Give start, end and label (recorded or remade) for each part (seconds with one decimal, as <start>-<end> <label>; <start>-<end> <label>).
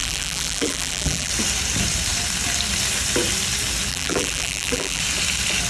0.0-1.3 remade; 1.3-3.9 recorded; 3.9-5.0 remade; 5.0-5.7 recorded